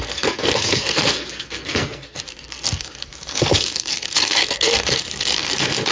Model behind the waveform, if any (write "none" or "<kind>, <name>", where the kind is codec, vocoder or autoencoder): codec, SNAC